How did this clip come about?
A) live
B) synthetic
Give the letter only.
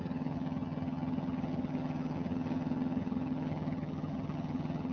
B